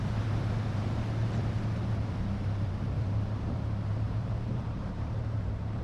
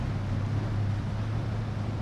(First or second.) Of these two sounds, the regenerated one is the first